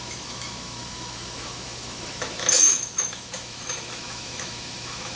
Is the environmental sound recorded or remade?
remade